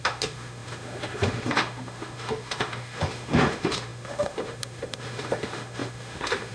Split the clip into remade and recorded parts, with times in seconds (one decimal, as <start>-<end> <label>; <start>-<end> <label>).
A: 0.0-6.5 remade